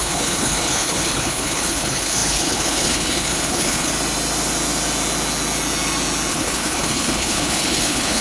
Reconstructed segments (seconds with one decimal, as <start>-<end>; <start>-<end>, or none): 0.0-3.9; 6.3-8.2